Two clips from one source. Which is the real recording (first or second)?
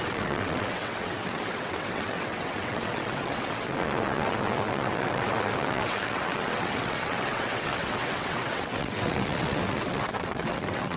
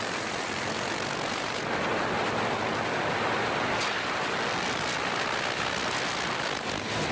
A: second